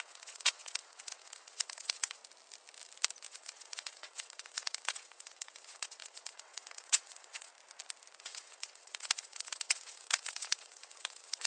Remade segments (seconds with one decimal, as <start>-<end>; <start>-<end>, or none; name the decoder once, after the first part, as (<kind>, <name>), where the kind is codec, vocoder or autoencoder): 0.0-2.2 (vocoder, WaveNeXt); 3.3-7.5; 8.2-11.5